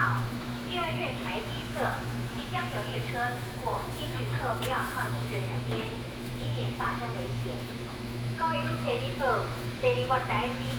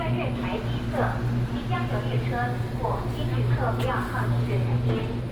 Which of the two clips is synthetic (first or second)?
first